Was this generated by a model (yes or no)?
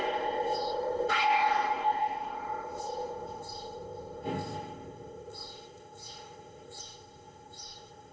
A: yes